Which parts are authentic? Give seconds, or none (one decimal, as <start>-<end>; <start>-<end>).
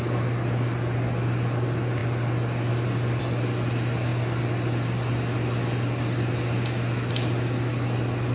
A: 0.0-8.3